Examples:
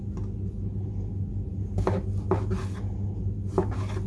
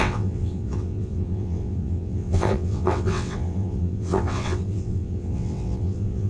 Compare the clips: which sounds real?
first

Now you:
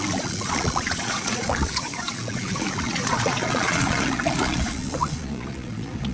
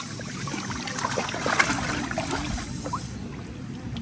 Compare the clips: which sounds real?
second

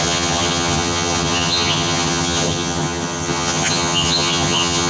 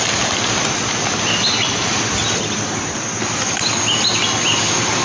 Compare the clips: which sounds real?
second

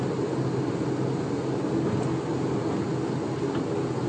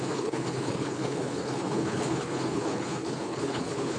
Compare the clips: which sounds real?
first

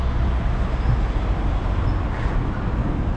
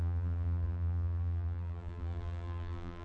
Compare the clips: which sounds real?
first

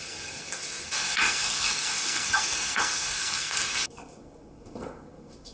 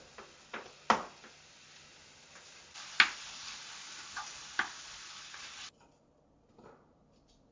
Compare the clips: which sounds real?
second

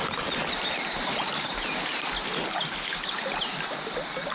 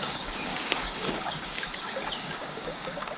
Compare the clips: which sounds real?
first